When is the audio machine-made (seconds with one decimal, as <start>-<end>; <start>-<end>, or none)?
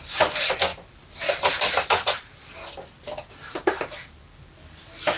none